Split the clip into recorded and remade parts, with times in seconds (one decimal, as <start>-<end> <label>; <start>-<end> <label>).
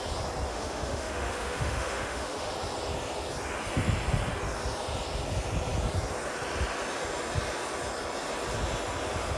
0.0-0.5 recorded; 0.5-2.5 remade; 2.5-9.4 recorded